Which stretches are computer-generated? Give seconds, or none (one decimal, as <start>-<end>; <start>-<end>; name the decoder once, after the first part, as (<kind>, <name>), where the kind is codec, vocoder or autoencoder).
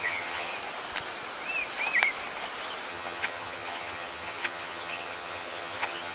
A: 0.0-0.5 (vocoder, HiFi-GAN); 2.9-6.1